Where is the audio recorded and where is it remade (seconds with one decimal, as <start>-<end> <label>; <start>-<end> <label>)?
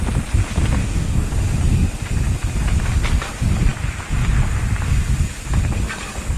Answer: 0.0-0.8 recorded; 0.8-1.3 remade; 1.3-6.4 recorded